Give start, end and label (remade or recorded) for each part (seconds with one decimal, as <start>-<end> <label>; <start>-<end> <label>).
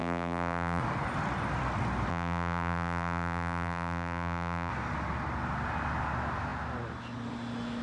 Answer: 0.0-0.8 remade; 0.8-2.1 recorded; 2.1-4.7 remade; 4.7-7.8 recorded